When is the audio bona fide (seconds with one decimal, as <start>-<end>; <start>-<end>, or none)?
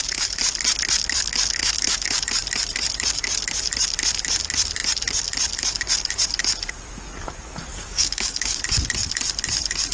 0.0-1.6; 2.2-7.7; 8.6-9.9